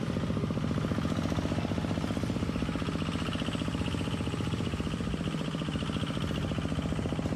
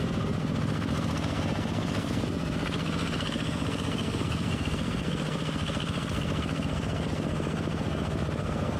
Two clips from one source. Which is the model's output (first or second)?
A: second